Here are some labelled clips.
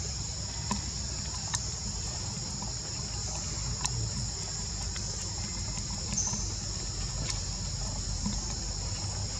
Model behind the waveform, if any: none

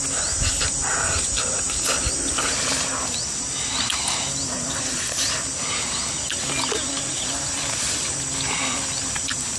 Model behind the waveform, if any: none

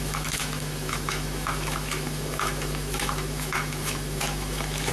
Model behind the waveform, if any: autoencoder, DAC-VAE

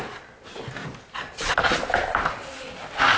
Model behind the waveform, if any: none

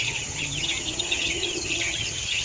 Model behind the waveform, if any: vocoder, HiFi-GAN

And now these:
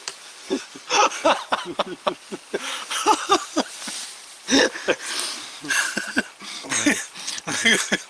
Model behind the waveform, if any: none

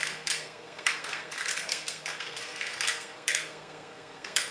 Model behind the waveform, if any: codec, SNAC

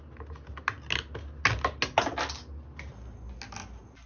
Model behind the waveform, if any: none